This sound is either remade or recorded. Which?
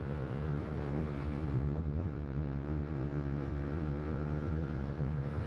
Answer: remade